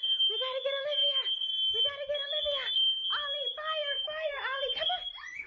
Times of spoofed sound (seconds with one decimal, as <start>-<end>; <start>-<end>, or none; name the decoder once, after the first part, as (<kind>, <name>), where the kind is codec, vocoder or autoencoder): none